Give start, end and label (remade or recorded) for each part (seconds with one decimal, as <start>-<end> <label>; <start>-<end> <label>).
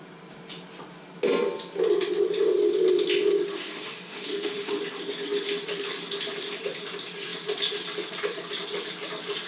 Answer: 0.0-3.5 recorded; 3.5-4.8 remade; 4.8-9.5 recorded